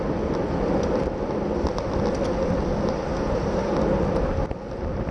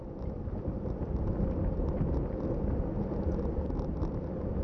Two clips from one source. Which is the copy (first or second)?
second